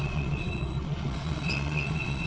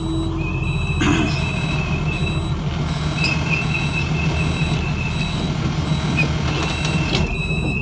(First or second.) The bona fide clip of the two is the second